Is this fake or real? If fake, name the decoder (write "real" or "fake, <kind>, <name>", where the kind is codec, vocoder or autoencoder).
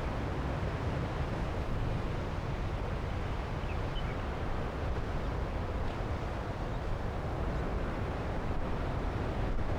real